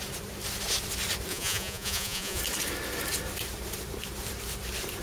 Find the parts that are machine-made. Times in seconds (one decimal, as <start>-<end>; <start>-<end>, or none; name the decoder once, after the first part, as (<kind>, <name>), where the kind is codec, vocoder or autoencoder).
1.3-2.4 (vocoder, Vocos)